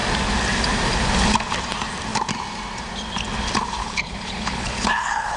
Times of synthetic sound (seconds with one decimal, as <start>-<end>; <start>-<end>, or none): 3.8-5.4